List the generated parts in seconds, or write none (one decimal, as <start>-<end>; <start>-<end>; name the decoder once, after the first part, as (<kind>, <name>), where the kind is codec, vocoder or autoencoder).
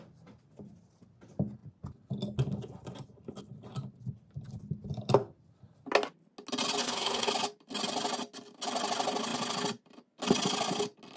6.8-7.3 (codec, SNAC)